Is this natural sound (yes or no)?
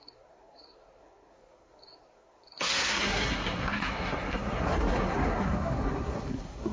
no